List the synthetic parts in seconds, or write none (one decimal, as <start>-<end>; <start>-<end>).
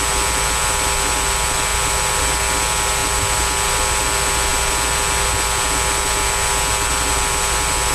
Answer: none